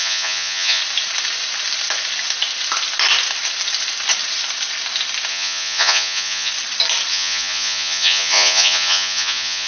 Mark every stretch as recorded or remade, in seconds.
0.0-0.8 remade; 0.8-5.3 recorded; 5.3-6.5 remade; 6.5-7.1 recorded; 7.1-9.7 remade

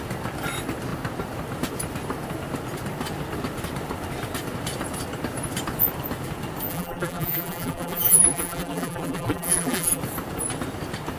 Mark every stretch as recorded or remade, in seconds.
0.0-6.7 recorded; 6.7-10.0 remade; 10.0-11.2 recorded